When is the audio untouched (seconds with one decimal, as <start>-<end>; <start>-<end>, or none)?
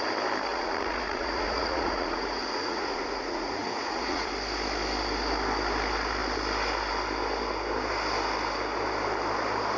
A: 0.0-0.5; 4.3-9.8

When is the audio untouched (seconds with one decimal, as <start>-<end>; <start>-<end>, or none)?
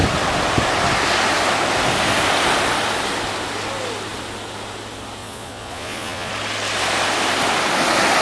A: 0.0-5.2; 6.3-8.2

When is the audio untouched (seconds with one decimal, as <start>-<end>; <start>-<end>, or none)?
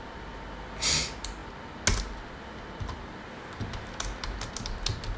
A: 0.0-5.2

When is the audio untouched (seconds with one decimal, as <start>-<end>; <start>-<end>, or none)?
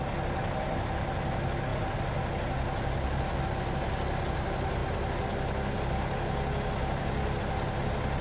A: 0.0-8.2